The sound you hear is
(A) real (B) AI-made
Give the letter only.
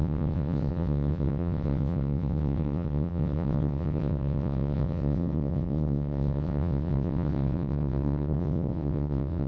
B